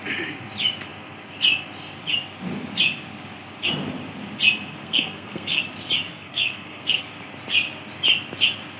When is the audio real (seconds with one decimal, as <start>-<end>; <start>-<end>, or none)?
0.0-4.8; 5.6-6.1; 7.0-8.8